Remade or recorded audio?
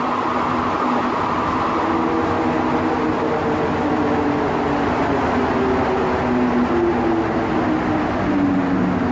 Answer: recorded